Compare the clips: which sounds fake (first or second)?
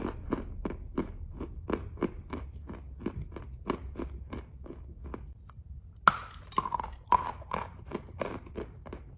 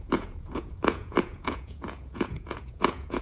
second